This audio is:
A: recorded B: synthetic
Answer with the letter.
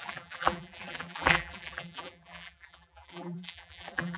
B